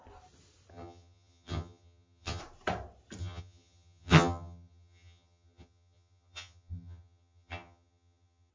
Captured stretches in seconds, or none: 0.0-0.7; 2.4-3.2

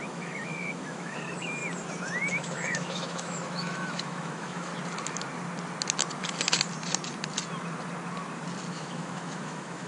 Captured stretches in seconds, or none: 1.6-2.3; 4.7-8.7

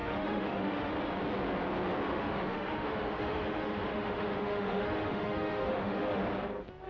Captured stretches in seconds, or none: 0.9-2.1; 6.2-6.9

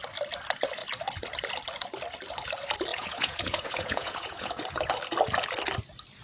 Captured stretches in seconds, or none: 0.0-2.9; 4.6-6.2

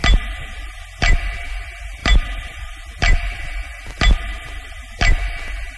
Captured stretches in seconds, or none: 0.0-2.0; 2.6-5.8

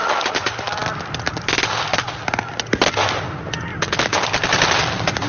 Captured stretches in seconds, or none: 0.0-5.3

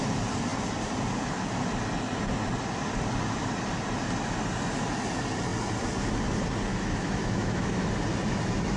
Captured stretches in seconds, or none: 0.0-6.7; 7.9-8.8

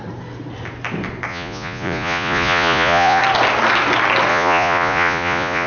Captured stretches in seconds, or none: 0.0-1.3; 3.2-4.3